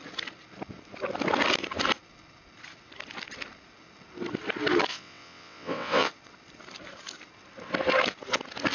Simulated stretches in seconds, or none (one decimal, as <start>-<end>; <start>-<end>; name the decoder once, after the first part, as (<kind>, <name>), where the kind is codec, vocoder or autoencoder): 4.9-6.1 (vocoder, WaveNeXt)